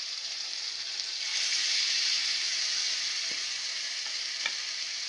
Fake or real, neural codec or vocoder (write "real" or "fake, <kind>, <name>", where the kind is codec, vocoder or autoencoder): fake, vocoder, BigVGAN v2